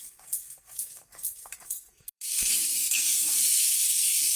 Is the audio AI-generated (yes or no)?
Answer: yes